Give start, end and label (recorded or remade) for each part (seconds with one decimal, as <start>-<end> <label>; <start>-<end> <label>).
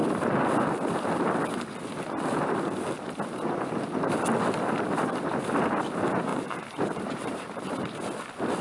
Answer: 0.0-6.3 recorded; 6.3-7.7 remade; 7.7-8.6 recorded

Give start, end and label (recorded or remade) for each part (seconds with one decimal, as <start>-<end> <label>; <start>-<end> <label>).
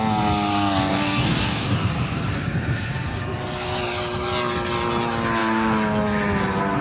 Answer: 0.0-0.9 recorded; 0.9-1.9 remade; 1.9-6.8 recorded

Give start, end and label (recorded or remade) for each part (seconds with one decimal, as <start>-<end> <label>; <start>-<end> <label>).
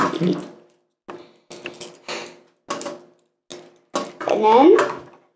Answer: 0.0-5.4 recorded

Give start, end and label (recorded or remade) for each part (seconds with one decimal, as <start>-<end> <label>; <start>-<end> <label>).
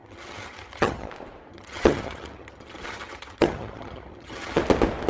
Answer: 0.0-1.1 remade; 1.1-1.5 recorded; 1.5-4.6 remade; 4.6-5.1 recorded